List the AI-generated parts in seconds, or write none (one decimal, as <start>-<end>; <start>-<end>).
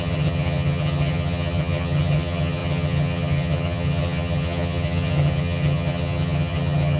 0.0-7.0